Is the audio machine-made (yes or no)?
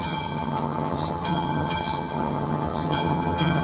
yes